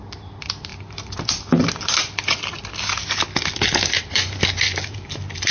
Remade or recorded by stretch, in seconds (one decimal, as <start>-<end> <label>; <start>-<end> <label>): 0.0-5.5 recorded